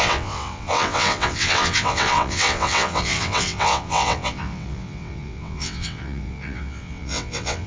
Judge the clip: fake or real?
fake